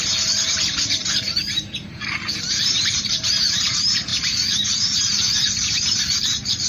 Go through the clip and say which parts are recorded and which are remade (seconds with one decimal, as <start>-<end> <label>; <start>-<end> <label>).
0.0-1.1 recorded; 1.1-4.1 remade; 4.1-4.7 recorded; 4.7-6.7 remade